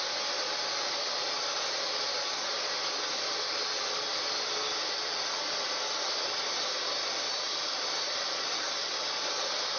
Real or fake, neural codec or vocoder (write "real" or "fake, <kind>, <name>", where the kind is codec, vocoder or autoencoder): real